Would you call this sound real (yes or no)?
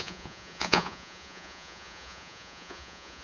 no